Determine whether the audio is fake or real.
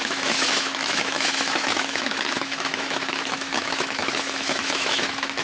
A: fake